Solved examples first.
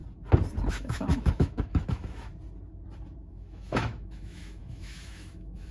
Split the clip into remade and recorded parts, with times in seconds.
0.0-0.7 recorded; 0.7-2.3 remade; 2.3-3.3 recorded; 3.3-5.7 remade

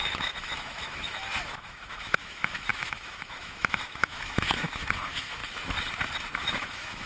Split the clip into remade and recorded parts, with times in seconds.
0.0-5.4 remade; 5.4-6.5 recorded; 6.5-7.1 remade

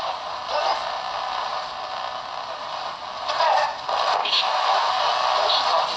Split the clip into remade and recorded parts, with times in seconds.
0.0-4.2 recorded; 4.2-4.9 remade; 4.9-6.0 recorded

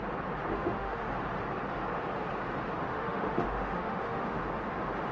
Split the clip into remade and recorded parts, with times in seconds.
0.0-0.5 recorded; 0.5-1.1 remade; 1.1-2.8 recorded; 2.8-4.4 remade; 4.4-5.1 recorded

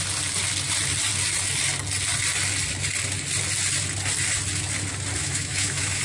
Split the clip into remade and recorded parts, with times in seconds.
0.0-5.2 recorded; 5.2-6.0 remade

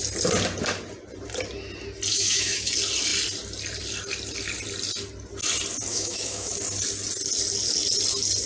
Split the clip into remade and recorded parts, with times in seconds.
0.0-2.1 recorded; 2.1-2.7 remade; 2.7-5.9 recorded; 5.9-6.5 remade; 6.5-8.5 recorded

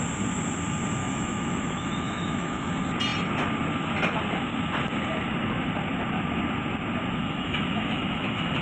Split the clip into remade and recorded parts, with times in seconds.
0.0-1.0 recorded; 1.0-2.7 remade; 2.7-7.2 recorded; 7.2-8.6 remade